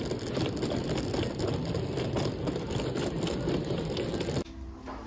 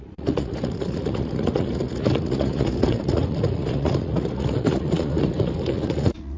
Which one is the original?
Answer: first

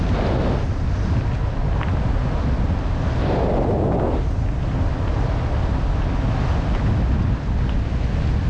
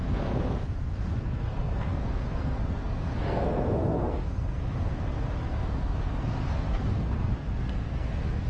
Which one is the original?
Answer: first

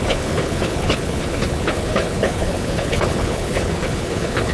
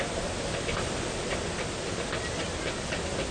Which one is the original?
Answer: second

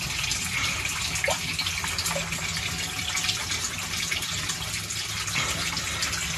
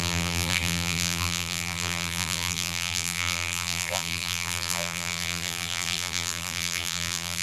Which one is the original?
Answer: first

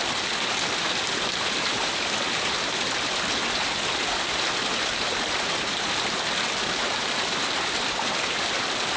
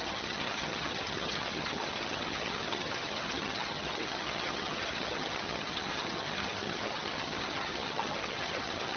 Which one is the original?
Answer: first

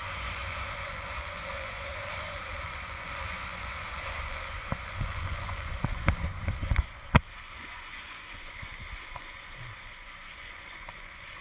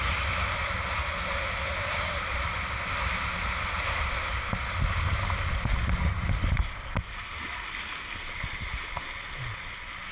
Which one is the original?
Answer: second